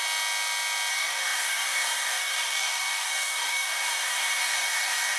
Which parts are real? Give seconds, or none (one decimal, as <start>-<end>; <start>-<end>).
0.0-0.9